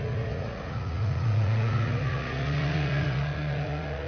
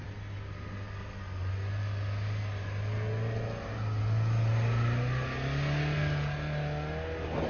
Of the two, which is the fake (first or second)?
first